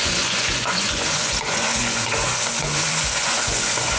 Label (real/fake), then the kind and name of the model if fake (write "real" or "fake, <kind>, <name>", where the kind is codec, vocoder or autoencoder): fake, vocoder, Vocos